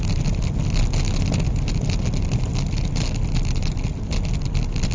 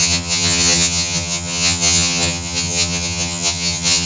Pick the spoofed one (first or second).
second